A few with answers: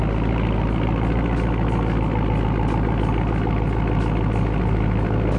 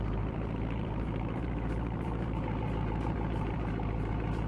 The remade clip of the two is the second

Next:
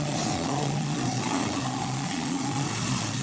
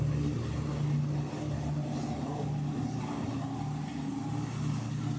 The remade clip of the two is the first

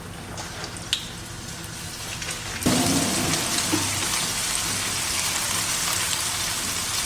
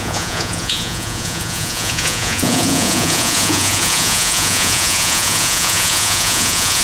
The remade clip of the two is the second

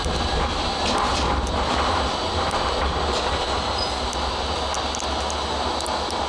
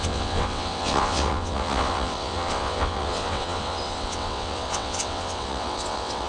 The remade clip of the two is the second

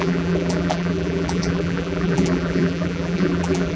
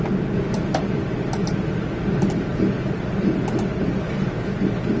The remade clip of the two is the first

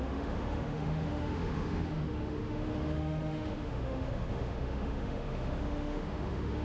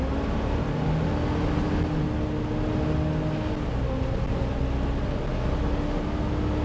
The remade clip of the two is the first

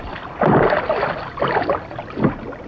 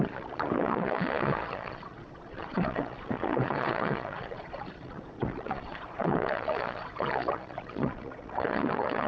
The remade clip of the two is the second